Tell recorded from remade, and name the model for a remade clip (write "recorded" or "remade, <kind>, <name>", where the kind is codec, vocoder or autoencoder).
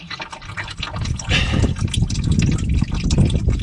recorded